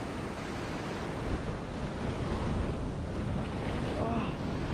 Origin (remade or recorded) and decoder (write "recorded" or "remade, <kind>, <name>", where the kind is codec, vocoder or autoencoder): recorded